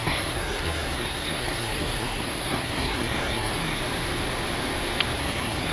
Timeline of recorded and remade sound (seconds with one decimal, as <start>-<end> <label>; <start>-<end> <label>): 0.0-3.8 remade; 3.8-5.2 recorded; 5.2-5.7 remade